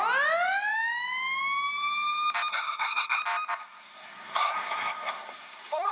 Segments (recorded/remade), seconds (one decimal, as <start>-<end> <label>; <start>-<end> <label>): 0.0-2.5 recorded; 2.5-3.2 remade; 3.2-3.6 recorded; 3.6-5.9 remade